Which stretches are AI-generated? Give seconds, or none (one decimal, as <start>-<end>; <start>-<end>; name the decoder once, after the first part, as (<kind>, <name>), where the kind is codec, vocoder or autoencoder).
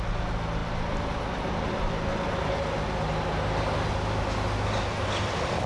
0.6-2.0 (vocoder, BigVGAN v2)